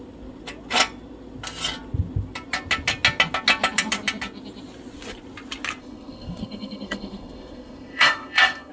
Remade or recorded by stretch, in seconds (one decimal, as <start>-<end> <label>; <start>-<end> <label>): 0.0-5.8 recorded; 5.8-8.7 remade